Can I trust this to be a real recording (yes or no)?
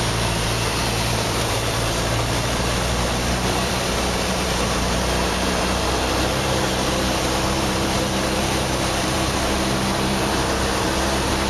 no